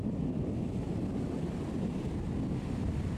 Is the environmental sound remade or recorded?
recorded